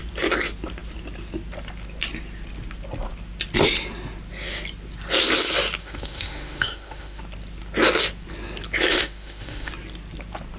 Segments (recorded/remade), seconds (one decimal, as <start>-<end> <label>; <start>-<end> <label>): 0.0-5.8 recorded; 5.8-7.2 remade; 7.2-8.9 recorded; 8.9-9.7 remade; 9.7-10.6 recorded